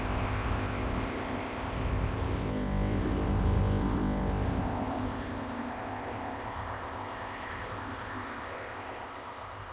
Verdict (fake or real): fake